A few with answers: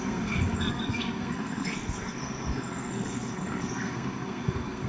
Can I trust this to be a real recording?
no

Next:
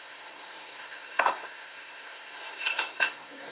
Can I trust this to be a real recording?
no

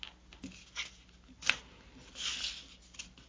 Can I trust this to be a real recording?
yes